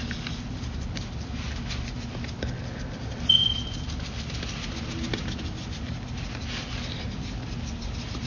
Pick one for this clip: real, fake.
real